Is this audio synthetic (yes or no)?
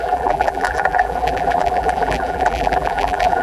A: yes